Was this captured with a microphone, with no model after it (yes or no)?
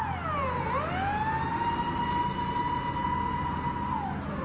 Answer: yes